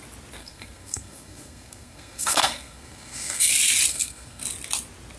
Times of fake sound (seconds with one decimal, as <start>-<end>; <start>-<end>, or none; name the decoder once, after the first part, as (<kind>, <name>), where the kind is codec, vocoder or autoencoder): 0.4-3.5 (codec, SNAC); 3.9-4.4